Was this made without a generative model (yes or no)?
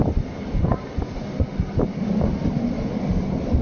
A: yes